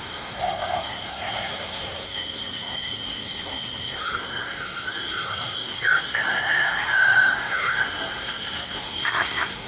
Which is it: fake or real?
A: fake